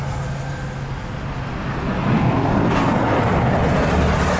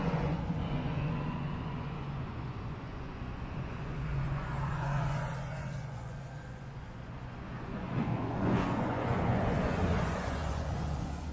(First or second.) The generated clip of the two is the second